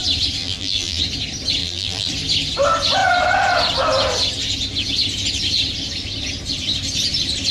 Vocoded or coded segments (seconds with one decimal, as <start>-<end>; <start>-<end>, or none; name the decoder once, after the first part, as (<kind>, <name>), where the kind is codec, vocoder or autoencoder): 0.4-1.0 (vocoder, BigVGAN v2); 1.6-2.1